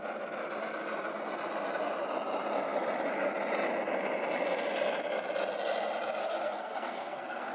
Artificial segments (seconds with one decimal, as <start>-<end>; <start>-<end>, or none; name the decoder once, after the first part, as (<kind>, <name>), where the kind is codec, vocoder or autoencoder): 6.2-7.5 (codec, SNAC)